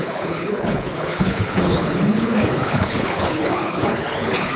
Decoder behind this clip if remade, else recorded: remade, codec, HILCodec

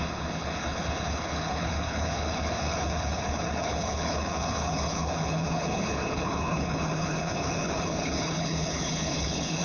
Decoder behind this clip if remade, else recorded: remade, codec, HILCodec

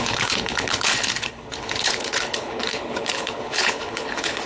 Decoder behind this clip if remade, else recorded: remade, codec, HILCodec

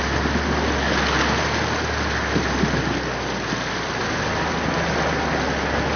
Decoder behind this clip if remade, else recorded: recorded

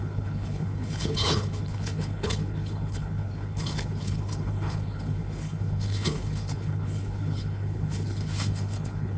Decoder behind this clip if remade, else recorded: remade, codec, HILCodec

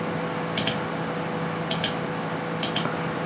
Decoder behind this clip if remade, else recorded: recorded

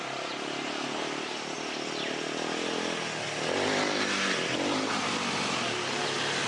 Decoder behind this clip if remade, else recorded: recorded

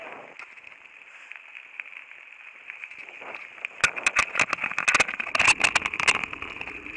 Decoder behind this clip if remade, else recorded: recorded